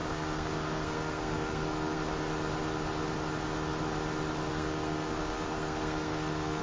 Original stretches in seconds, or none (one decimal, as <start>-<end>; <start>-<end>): 2.0-4.5